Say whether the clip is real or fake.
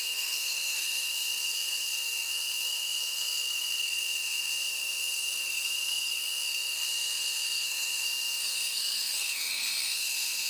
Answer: fake